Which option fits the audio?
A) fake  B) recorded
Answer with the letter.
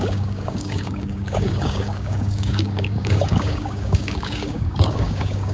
A